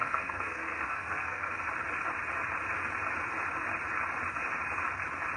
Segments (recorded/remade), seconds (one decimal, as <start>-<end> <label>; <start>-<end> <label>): 0.0-1.6 remade; 1.6-5.4 recorded